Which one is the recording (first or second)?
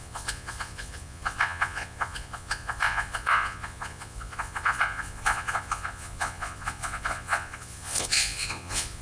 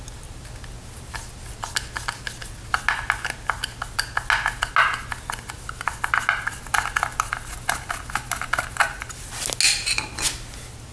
second